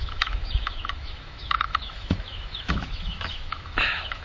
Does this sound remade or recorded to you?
remade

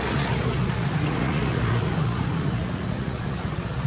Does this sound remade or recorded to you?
remade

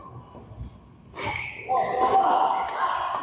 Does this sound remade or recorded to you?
recorded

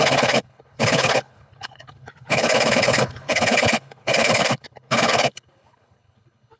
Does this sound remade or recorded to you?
remade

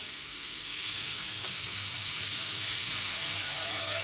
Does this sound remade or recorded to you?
remade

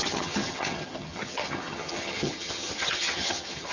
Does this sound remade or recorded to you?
remade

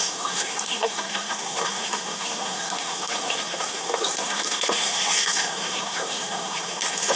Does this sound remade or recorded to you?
remade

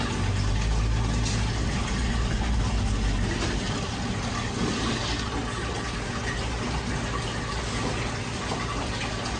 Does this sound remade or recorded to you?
recorded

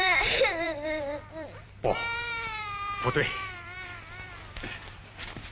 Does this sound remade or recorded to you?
remade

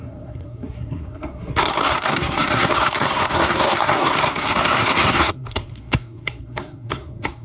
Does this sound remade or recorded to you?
remade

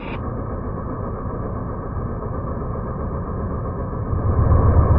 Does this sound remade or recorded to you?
recorded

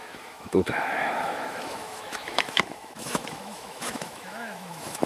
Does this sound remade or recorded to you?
remade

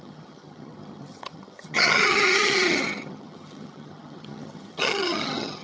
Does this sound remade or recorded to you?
remade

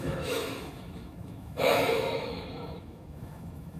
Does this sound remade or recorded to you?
remade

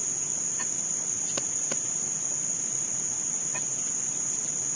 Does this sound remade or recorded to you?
recorded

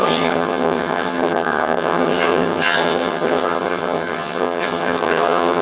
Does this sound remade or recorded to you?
remade